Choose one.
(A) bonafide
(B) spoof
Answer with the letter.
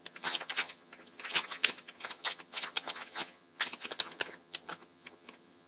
B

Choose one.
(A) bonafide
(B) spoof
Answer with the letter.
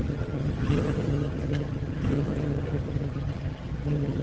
B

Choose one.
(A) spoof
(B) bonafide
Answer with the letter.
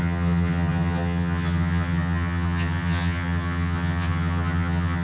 A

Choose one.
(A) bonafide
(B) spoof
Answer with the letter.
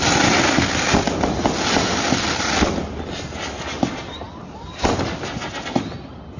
A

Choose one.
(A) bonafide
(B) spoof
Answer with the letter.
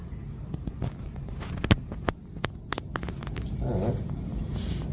A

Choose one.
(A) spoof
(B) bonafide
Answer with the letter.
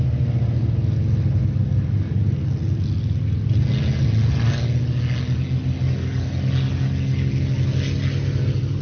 B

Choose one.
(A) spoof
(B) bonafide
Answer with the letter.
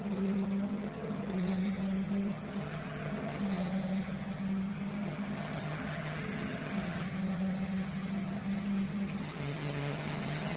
A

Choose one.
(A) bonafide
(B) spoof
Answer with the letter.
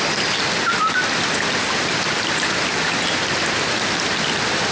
A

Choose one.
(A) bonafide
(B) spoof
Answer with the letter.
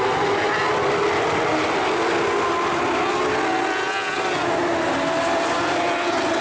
A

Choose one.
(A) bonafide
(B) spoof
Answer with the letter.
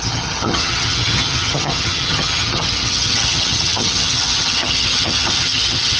B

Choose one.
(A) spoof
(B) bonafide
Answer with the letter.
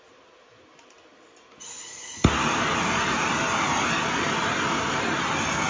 B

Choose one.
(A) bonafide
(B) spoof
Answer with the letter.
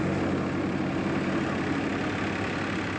A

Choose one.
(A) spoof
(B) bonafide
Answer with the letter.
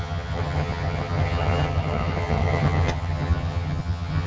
A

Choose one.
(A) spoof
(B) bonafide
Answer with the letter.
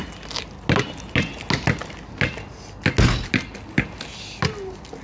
B